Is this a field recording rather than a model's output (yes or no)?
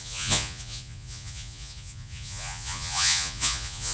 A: no